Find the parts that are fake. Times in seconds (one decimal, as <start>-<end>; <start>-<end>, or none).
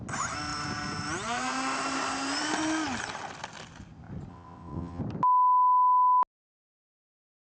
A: 4.3-5.0